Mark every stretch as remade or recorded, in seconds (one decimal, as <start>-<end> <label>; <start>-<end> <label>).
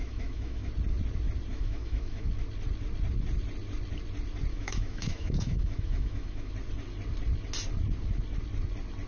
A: 0.0-0.7 remade; 0.7-1.5 recorded; 1.5-2.3 remade; 2.3-4.5 recorded; 4.5-6.5 remade; 6.5-9.1 recorded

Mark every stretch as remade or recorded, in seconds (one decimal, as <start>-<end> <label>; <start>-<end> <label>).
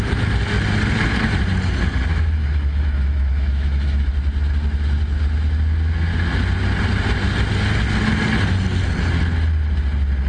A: 0.0-2.1 recorded; 2.1-4.1 remade; 4.1-10.3 recorded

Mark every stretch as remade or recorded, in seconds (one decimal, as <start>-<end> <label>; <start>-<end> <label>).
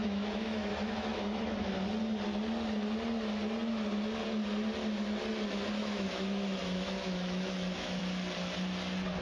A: 0.0-1.7 remade; 1.7-5.8 recorded; 5.8-8.0 remade; 8.0-9.2 recorded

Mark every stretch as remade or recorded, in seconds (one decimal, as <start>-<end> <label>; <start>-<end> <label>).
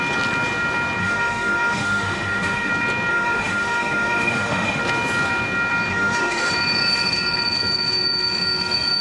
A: 0.0-1.0 recorded; 1.0-2.7 remade; 2.7-3.1 recorded; 3.1-4.8 remade; 4.8-5.9 recorded; 5.9-6.5 remade; 6.5-9.0 recorded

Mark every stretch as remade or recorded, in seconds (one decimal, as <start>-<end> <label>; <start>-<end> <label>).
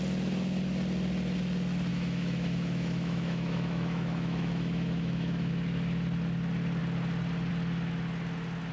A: 0.0-1.9 recorded; 1.9-5.5 remade; 5.5-8.7 recorded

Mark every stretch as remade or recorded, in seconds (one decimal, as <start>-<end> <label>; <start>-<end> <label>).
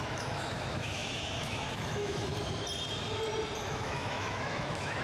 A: 0.0-2.3 remade; 2.3-3.6 recorded; 3.6-5.0 remade